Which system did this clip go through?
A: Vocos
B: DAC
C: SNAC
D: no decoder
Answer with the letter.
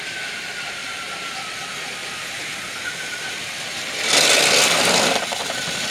D